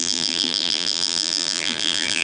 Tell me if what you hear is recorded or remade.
remade